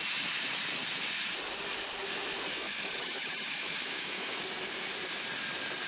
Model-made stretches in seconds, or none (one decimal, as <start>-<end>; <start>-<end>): 2.5-4.4